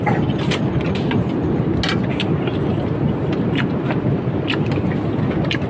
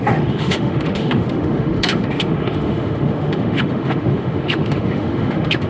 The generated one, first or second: second